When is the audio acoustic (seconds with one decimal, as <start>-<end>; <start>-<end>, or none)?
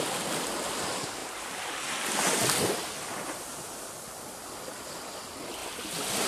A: 0.0-6.3